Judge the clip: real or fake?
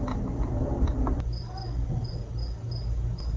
real